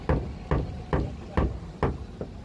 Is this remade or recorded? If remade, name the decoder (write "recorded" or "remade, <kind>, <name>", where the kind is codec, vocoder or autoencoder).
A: recorded